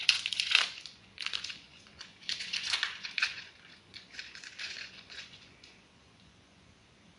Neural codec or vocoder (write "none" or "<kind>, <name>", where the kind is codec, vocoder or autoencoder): vocoder, Vocos